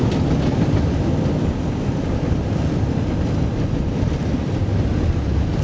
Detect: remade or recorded recorded